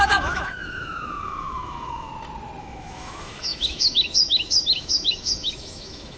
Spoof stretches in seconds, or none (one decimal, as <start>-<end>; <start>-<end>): 0.0-2.1; 2.6-6.2

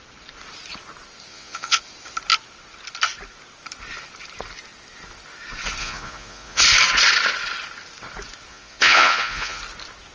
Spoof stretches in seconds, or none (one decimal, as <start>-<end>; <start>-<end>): 1.3-1.8; 5.8-6.6; 8.5-9.6

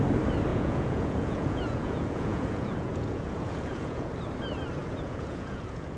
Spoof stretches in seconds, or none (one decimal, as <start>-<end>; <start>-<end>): 0.5-4.1; 4.8-6.0

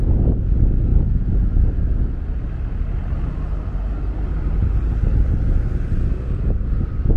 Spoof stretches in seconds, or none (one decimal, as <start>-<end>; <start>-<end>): 0.9-1.8

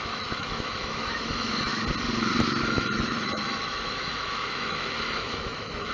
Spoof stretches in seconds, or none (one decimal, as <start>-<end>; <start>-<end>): 0.0-1.7; 2.6-5.9

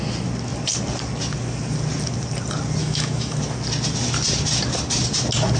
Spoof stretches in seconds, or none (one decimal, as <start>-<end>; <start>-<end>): 2.8-3.4